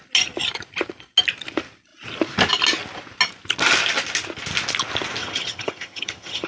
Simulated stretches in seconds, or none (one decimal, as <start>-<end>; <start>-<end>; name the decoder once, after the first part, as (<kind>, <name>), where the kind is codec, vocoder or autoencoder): 5.2-6.5 (vocoder, HiFi-GAN)